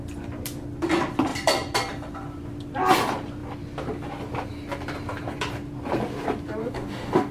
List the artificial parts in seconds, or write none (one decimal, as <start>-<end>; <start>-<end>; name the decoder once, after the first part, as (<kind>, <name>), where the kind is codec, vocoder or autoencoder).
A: 6.6-7.3 (codec, DAC)